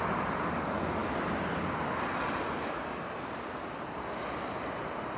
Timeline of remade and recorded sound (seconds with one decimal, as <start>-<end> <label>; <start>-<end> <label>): 0.0-5.2 recorded